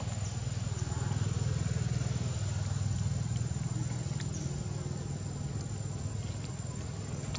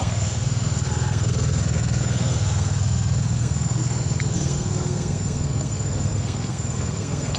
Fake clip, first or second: second